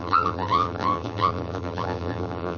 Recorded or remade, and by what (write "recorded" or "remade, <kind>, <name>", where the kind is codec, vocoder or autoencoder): remade, vocoder, BigVGAN v2